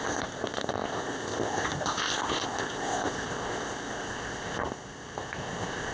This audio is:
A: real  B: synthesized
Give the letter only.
B